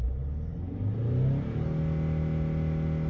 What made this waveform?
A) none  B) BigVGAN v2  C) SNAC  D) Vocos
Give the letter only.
A